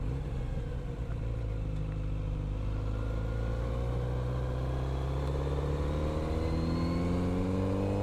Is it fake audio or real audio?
real